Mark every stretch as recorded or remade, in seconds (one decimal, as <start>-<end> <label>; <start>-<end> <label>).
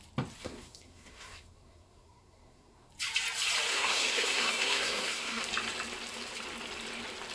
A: 0.0-0.4 recorded; 0.4-2.9 remade; 2.9-3.7 recorded; 3.7-5.4 remade; 5.4-7.3 recorded